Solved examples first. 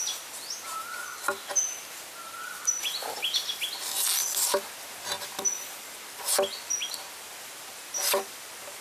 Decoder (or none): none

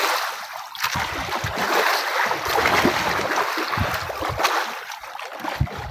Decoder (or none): none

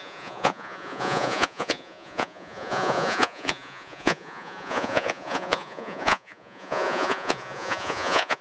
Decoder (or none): vocoder, Vocos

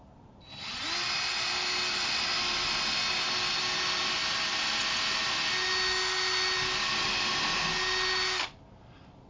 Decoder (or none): none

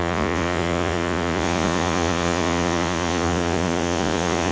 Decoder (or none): vocoder, Vocos